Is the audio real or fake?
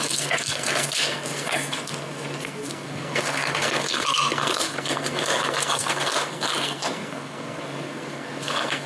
fake